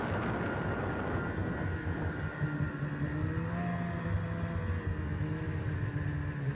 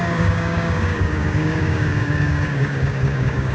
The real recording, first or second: first